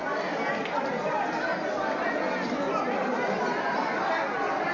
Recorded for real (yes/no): yes